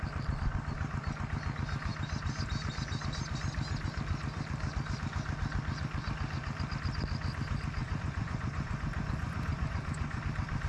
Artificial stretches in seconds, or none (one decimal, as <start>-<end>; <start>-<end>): 7.8-10.2